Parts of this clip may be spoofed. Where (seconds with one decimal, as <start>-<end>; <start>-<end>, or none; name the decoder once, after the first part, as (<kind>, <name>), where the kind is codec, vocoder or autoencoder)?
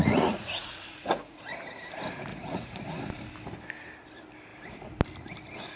0.0-1.4 (vocoder, Vocos); 2.3-2.8